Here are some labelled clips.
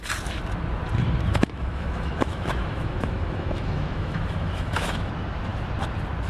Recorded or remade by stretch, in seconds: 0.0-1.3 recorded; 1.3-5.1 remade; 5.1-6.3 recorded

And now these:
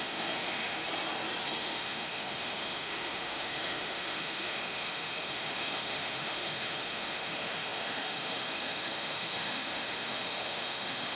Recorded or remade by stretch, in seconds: 0.0-0.8 remade; 0.8-1.6 recorded; 1.6-11.2 remade

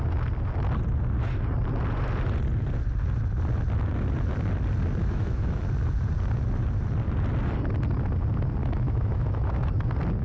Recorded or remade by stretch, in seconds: 0.0-5.0 recorded; 5.0-5.6 remade; 5.6-8.6 recorded; 8.6-9.7 remade; 9.7-10.2 recorded

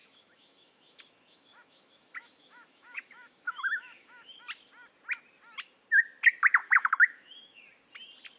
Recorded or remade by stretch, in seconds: 0.0-4.4 remade; 4.4-6.6 recorded; 6.6-7.6 remade; 7.6-8.4 recorded

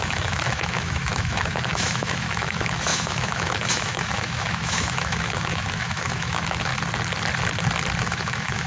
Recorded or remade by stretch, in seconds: 0.0-6.7 remade; 6.7-8.0 recorded; 8.0-8.7 remade